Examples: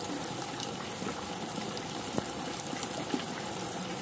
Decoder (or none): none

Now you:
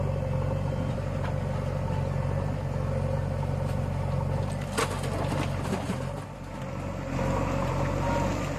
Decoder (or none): none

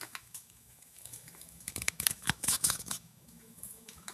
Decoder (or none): autoencoder, DAC-VAE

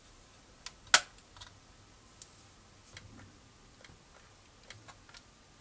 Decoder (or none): none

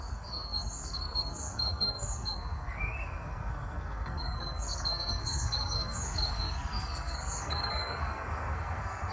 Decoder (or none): codec, SNAC